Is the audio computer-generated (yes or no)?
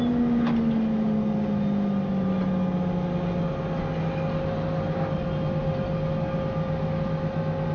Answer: no